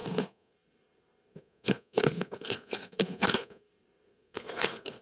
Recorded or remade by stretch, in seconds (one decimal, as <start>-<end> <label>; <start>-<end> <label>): 0.0-5.0 remade